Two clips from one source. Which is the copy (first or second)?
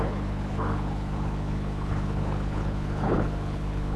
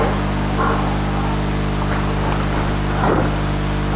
first